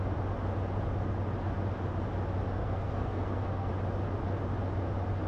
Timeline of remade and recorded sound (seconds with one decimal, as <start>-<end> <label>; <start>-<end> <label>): 0.0-2.6 recorded; 2.6-3.7 remade; 3.7-5.3 recorded